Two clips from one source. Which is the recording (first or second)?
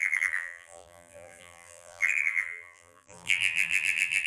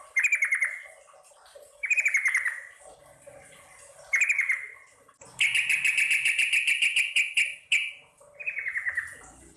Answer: second